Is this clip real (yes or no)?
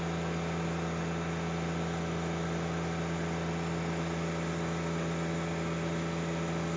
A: yes